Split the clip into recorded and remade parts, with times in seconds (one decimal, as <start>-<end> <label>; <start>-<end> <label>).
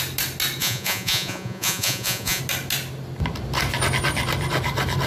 0.0-0.6 recorded; 0.6-2.4 remade; 2.4-5.1 recorded